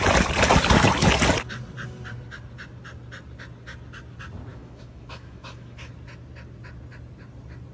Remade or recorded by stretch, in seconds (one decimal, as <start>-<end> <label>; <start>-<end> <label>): 0.0-4.5 recorded; 4.5-5.9 remade; 5.9-7.7 recorded